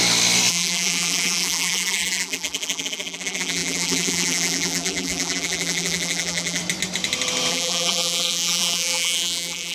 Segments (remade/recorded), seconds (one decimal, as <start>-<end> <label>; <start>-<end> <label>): 0.0-0.5 recorded; 0.5-6.6 remade; 6.6-7.5 recorded; 7.5-9.7 remade